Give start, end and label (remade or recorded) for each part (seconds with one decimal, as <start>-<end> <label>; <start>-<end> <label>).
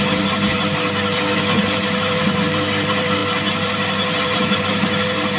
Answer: 0.0-5.4 remade